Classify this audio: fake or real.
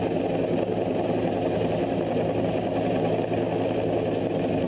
real